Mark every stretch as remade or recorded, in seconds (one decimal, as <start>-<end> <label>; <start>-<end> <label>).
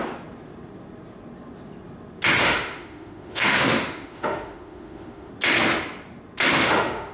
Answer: 0.0-2.4 recorded; 2.4-5.3 remade; 5.3-6.5 recorded; 6.5-7.1 remade